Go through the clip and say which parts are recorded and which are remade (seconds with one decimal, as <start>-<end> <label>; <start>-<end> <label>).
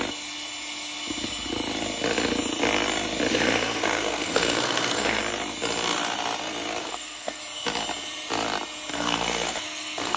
0.0-3.3 recorded; 3.3-5.2 remade; 5.2-6.8 recorded; 6.8-7.4 remade; 7.4-8.9 recorded; 8.9-10.2 remade